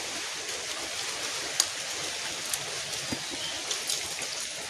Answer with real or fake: real